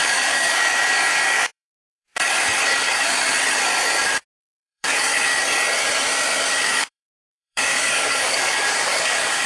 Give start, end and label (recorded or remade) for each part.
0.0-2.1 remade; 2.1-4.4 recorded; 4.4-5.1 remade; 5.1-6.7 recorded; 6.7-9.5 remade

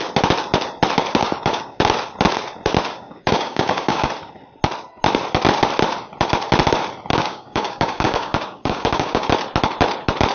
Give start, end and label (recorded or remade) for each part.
0.0-1.2 recorded; 1.2-1.8 remade; 1.8-2.9 recorded; 2.9-4.1 remade; 4.1-7.1 recorded; 7.1-9.3 remade; 9.3-10.3 recorded

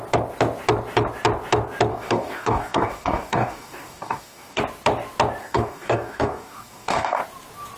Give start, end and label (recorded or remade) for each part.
0.0-1.9 recorded; 1.9-4.6 remade; 4.6-5.4 recorded; 5.4-7.2 remade; 7.2-7.8 recorded

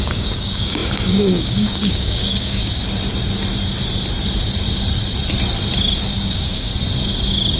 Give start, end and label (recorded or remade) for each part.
0.0-2.6 remade; 2.6-6.3 recorded; 6.3-6.7 remade; 6.7-7.6 recorded

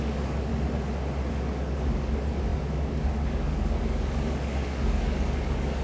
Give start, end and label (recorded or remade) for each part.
0.0-0.5 remade; 0.5-1.3 recorded; 1.3-5.8 remade

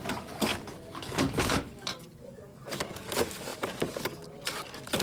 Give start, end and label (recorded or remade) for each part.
0.0-5.0 remade